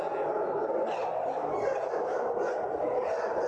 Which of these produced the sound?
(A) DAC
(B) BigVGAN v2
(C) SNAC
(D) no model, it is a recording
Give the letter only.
D